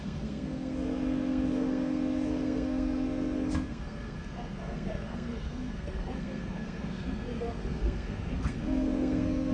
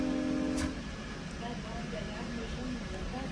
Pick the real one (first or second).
second